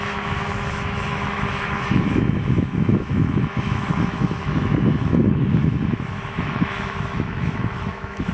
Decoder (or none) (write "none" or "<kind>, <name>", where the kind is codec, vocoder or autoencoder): autoencoder, DAC-VAE